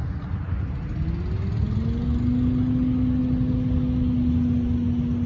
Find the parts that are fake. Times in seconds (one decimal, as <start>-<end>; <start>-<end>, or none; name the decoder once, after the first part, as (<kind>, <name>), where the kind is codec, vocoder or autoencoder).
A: none